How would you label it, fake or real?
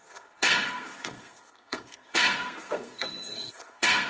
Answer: fake